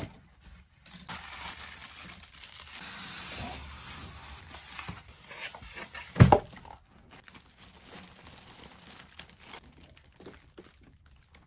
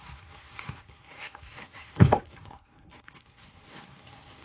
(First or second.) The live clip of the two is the first